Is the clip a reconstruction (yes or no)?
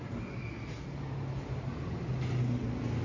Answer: no